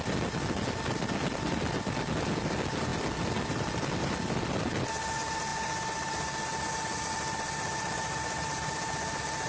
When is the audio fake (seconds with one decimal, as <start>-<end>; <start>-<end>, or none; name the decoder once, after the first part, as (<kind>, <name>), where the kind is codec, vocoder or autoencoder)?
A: none